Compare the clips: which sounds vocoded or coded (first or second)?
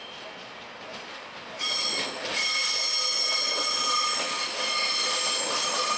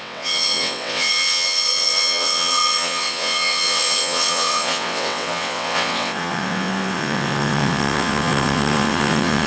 second